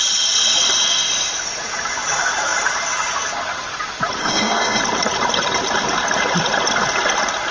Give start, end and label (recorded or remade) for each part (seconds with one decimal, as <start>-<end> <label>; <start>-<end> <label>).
0.0-4.2 recorded; 4.2-4.8 remade; 4.8-7.5 recorded